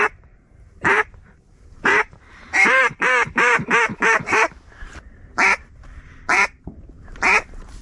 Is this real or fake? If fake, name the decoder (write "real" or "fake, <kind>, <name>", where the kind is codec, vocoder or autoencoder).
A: fake, vocoder, BigVGAN v2